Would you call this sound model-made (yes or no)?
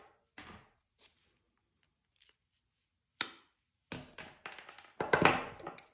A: no